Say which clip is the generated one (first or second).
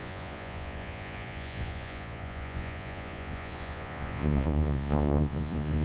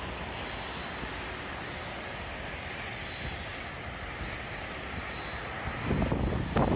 first